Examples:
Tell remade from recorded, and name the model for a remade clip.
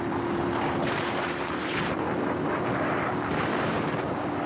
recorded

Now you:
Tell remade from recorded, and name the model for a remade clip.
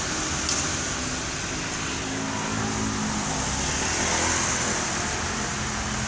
recorded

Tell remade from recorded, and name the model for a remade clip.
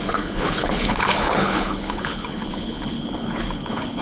remade, codec, HILCodec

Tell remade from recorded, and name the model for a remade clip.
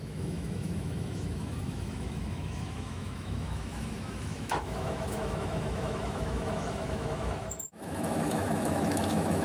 remade, autoencoder, DAC-VAE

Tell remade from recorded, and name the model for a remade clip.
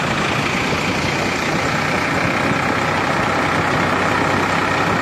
recorded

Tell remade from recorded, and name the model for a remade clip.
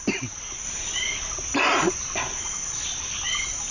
recorded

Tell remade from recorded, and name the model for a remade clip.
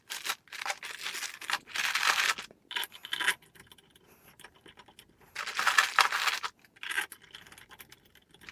recorded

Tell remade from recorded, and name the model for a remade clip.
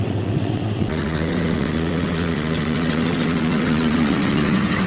remade, vocoder, WaveNeXt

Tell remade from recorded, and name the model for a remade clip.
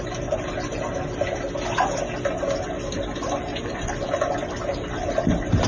recorded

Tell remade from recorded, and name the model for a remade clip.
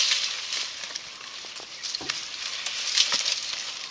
recorded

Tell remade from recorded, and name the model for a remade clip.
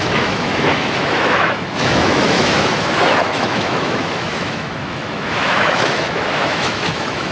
remade, autoencoder, DAC-VAE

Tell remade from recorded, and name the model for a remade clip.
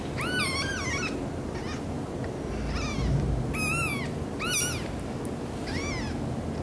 recorded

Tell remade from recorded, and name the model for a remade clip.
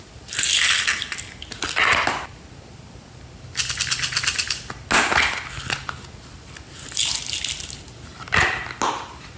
recorded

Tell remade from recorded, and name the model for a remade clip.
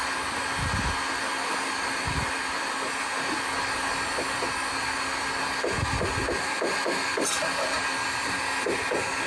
recorded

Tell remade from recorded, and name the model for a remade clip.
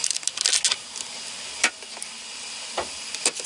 recorded